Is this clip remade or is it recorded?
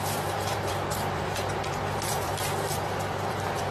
remade